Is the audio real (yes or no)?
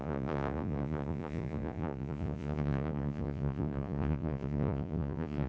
no